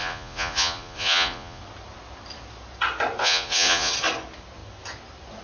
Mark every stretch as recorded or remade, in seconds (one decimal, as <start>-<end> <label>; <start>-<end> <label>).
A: 0.0-1.6 remade; 1.6-3.2 recorded; 3.2-3.9 remade; 3.9-5.4 recorded